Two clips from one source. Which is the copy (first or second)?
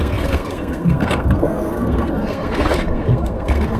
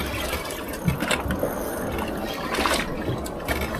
first